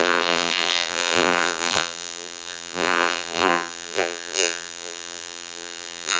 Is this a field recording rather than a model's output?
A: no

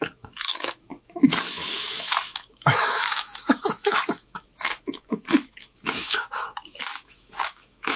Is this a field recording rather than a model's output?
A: no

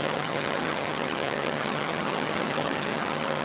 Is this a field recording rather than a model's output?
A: no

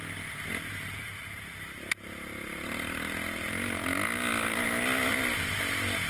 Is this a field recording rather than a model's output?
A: yes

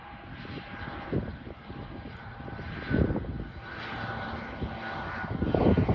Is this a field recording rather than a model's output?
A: yes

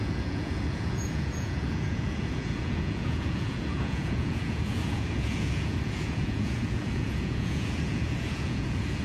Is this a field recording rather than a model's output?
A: no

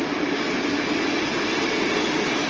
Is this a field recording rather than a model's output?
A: yes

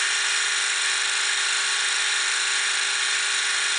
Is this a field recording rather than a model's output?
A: yes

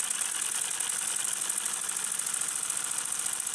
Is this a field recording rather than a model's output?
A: yes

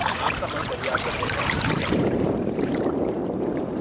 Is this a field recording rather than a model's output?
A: no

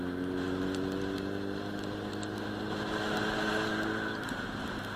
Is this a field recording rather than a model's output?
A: yes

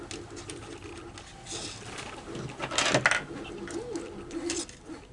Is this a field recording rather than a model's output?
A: yes